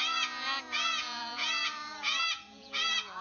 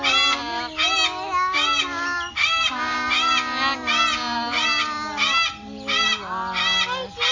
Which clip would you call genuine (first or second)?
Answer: second